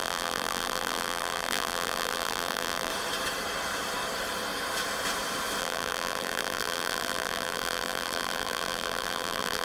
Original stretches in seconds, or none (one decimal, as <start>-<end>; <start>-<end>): 2.9-5.6